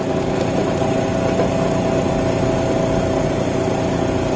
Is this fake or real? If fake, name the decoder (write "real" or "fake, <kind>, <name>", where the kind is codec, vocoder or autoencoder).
real